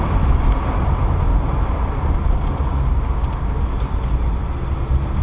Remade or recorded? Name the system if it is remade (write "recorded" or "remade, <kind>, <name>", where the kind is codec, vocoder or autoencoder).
recorded